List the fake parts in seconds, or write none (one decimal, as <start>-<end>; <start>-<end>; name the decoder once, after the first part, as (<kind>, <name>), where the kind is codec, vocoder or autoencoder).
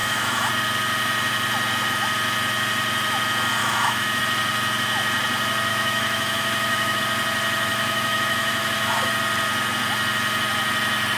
0.0-0.5 (autoencoder, DAC-VAE); 3.6-4.2; 5.7-7.0; 7.7-9.1